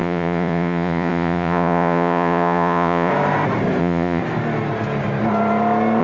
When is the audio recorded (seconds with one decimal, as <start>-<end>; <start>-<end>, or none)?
3.1-3.8; 4.2-6.0